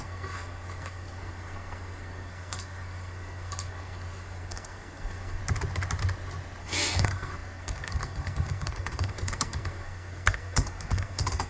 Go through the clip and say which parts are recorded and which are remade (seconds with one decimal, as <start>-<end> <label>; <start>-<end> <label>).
0.0-5.4 remade; 5.4-6.6 recorded; 6.6-11.5 remade

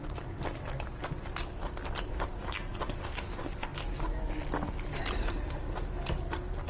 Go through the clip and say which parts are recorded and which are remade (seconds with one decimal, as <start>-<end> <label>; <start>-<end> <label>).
0.0-6.7 recorded

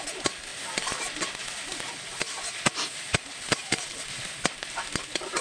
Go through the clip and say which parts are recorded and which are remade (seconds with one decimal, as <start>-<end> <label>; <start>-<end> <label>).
0.0-5.4 recorded

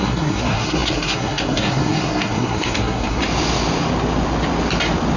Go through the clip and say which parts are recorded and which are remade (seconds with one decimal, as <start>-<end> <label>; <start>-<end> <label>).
0.0-3.2 remade; 3.2-5.2 recorded

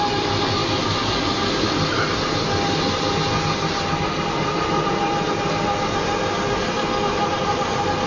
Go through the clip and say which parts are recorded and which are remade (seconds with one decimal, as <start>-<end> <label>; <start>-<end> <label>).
0.0-8.1 recorded

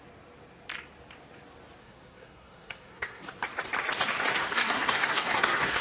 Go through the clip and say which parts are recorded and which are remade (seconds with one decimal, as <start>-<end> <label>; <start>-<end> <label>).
0.0-1.8 recorded; 1.8-3.2 remade; 3.2-4.3 recorded; 4.3-5.8 remade

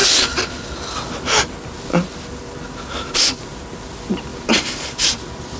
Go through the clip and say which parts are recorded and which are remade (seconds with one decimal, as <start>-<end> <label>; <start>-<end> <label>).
0.0-5.6 recorded

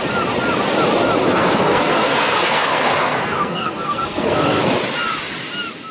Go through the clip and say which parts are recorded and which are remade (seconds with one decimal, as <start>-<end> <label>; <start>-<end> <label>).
0.0-1.2 recorded; 1.2-4.7 remade; 4.7-5.9 recorded